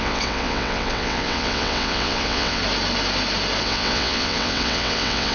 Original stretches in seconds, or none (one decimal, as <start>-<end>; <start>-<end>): 2.6-3.6